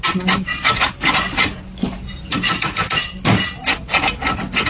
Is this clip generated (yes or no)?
no